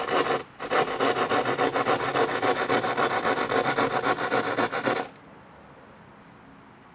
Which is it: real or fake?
real